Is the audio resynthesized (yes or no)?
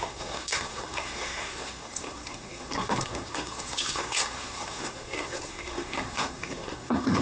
yes